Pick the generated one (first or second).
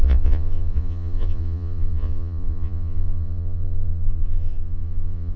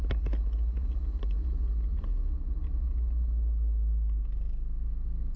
first